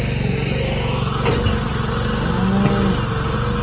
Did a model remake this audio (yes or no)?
no